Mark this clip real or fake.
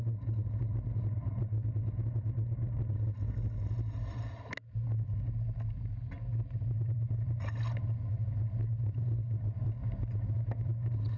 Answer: real